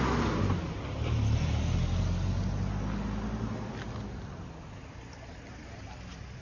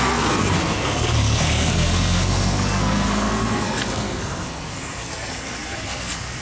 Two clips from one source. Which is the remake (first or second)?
second